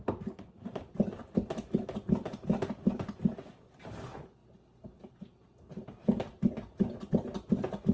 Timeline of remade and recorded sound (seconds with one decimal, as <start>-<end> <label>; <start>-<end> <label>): 0.0-7.9 recorded